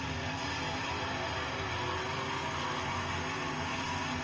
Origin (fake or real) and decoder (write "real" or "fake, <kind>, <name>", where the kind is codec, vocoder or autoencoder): real